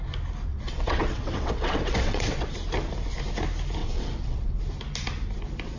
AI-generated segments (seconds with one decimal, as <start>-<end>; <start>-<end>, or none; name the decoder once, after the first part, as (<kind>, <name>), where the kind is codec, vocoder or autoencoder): 0.5-2.5 (vocoder, WaveNeXt); 3.8-4.6